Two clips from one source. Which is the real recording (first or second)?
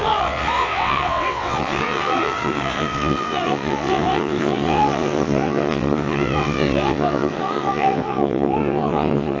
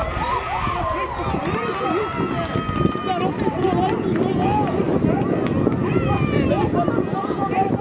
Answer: second